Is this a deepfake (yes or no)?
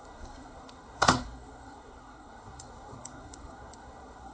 yes